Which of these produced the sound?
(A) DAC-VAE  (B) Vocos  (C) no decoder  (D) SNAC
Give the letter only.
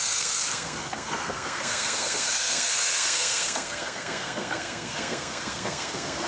D